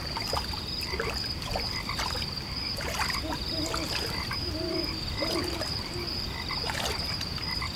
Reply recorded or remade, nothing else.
remade